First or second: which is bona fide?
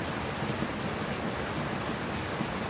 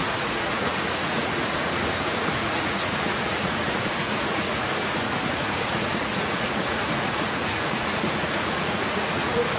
first